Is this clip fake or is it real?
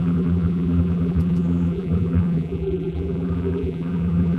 fake